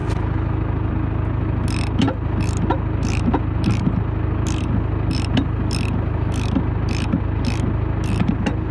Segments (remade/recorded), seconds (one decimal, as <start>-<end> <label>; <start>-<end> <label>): 0.0-8.7 recorded